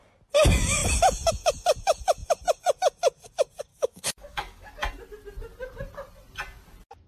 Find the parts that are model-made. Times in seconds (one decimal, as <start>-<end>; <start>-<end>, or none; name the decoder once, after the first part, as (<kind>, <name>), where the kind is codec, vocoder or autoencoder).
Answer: 3.7-4.7 (codec, DAC)

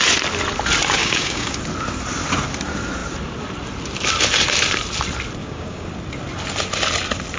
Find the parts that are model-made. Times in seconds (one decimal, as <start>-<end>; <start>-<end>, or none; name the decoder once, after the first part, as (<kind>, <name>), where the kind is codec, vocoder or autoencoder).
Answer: 1.0-1.6 (codec, DAC); 5.4-5.9

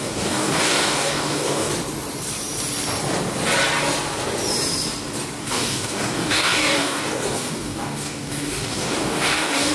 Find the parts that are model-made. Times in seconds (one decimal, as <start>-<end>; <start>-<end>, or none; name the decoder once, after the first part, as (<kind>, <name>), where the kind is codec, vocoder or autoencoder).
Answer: 0.0-1.7 (codec, DAC); 5.4-9.7